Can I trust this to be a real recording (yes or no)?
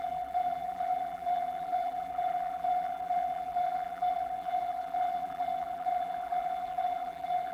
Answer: no